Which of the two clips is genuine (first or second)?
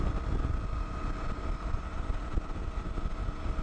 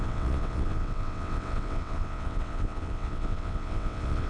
first